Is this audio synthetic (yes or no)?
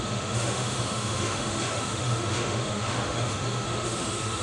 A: yes